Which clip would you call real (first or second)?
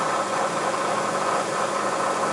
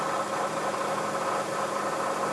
second